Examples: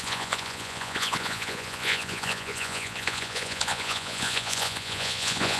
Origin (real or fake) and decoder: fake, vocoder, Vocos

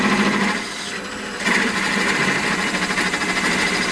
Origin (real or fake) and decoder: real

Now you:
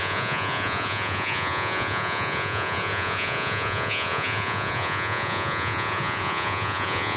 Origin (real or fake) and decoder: fake, vocoder, Vocos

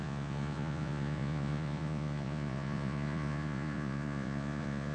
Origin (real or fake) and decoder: fake, vocoder, Vocos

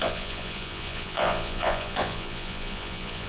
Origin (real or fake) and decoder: fake, vocoder, Vocos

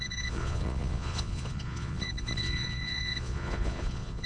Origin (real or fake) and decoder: fake, vocoder, Vocos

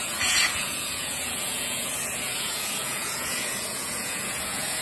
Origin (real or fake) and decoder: fake, vocoder, Vocos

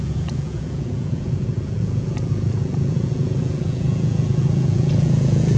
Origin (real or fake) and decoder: fake, vocoder, Vocos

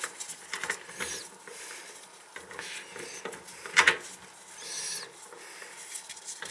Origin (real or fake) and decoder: real